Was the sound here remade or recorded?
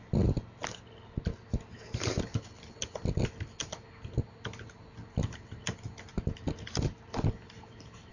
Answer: recorded